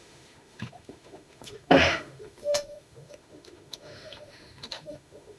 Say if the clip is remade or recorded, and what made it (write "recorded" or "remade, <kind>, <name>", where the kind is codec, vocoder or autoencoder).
remade, autoencoder, DAC-VAE